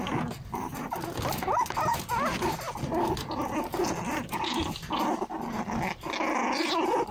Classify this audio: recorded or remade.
recorded